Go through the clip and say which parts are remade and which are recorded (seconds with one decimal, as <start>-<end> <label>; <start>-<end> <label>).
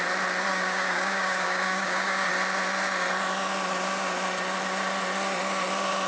0.0-0.5 recorded; 0.5-2.3 remade; 2.3-6.1 recorded